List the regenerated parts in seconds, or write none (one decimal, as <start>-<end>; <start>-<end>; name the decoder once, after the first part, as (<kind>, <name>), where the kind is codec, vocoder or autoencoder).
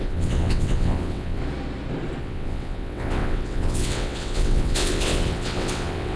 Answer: 0.0-1.4 (vocoder, WaveNeXt); 2.2-6.2